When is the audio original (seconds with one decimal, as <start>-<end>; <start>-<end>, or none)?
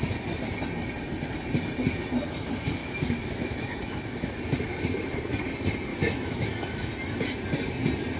0.0-2.8; 4.3-5.9; 6.9-8.2